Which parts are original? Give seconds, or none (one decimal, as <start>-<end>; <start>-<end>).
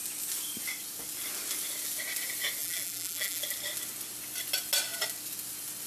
0.0-2.6; 3.4-5.9